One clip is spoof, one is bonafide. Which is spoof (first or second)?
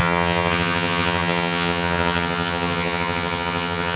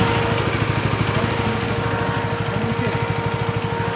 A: first